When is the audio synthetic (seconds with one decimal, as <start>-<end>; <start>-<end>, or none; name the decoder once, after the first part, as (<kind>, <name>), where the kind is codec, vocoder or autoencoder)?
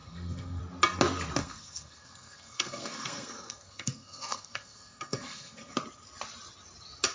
0.0-0.6 (codec, SNAC); 1.4-5.7